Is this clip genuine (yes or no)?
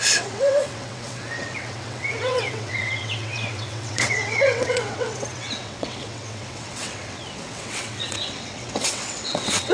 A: no